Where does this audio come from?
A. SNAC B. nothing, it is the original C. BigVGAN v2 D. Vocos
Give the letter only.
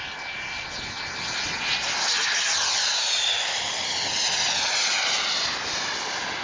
B